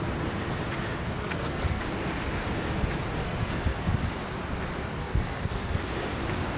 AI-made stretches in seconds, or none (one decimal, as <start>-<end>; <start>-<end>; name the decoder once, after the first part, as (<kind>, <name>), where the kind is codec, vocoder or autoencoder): 1.2-1.8 (codec, SNAC); 3.2-4.0; 5.0-5.8